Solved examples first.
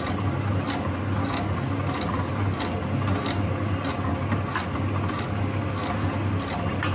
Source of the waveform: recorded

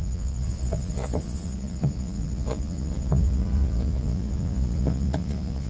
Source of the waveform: remade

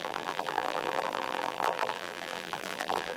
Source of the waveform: remade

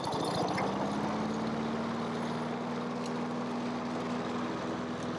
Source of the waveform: recorded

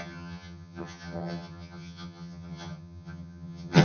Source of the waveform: remade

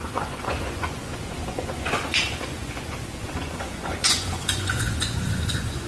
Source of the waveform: remade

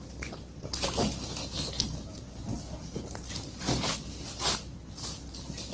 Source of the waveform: recorded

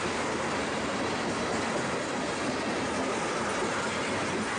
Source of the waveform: recorded